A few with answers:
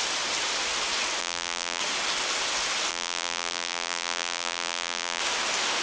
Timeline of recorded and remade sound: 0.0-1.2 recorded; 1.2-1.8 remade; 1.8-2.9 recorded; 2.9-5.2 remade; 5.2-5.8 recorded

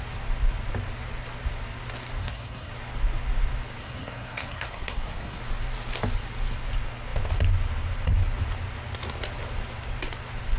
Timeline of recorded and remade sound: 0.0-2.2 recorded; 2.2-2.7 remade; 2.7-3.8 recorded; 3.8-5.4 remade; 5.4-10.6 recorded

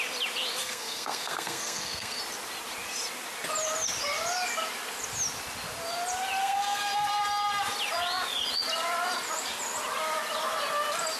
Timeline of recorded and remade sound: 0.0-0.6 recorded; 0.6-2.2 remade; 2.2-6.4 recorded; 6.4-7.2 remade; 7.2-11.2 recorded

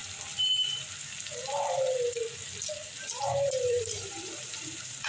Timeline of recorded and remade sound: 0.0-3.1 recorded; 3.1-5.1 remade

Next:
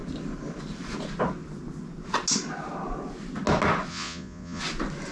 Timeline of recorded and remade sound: 0.0-3.9 recorded; 3.9-4.6 remade; 4.6-5.1 recorded

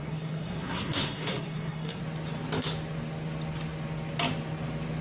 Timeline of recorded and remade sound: 0.0-2.0 remade; 2.0-5.0 recorded

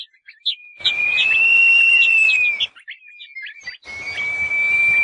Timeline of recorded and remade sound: 0.0-0.6 recorded; 0.6-1.4 remade; 1.4-5.0 recorded